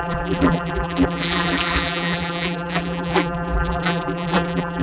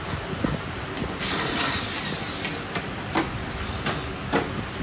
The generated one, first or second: first